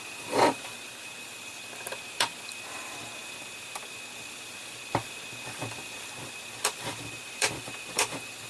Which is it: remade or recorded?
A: remade